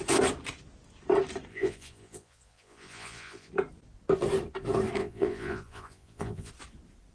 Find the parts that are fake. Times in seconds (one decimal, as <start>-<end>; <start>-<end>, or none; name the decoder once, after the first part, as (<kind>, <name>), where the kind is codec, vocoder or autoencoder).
1.5-3.5 (vocoder, Vocos); 5.0-6.5